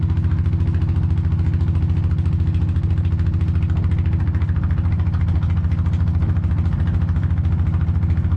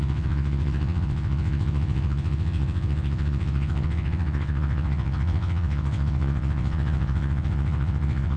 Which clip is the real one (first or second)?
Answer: first